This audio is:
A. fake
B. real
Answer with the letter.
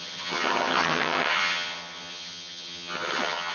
A